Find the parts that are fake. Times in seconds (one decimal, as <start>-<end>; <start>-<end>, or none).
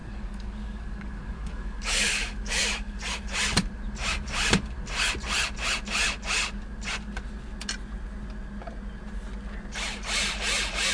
0.0-3.0